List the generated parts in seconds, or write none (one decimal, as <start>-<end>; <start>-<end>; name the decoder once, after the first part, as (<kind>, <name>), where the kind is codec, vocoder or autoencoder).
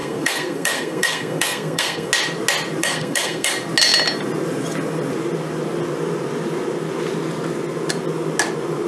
0.0-2.1 (codec, SNAC); 2.8-3.5